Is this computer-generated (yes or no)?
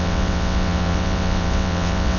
yes